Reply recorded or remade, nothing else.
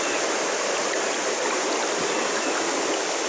recorded